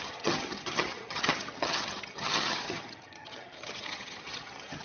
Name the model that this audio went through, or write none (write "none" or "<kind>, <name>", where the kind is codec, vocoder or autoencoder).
vocoder, HiFi-GAN